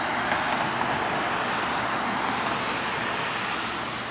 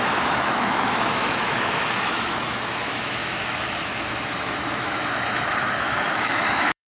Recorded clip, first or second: first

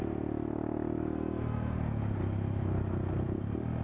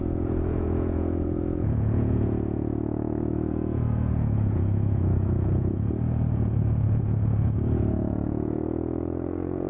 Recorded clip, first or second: first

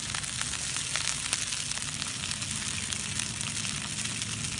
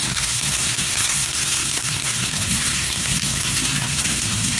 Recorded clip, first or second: first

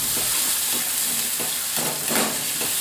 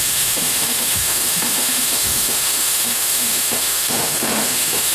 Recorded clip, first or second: first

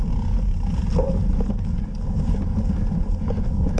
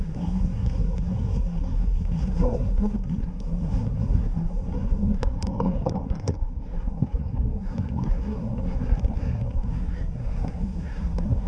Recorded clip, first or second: first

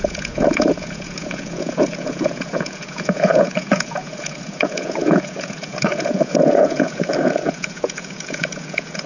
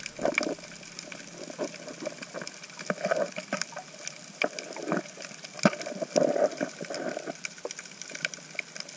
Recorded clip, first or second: second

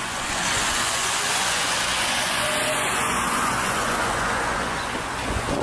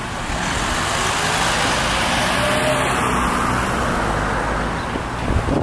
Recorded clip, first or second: second